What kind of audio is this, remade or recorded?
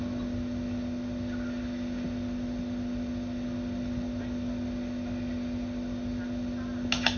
recorded